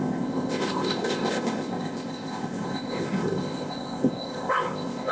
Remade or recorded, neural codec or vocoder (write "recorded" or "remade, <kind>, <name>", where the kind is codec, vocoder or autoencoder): remade, codec, ZipCodec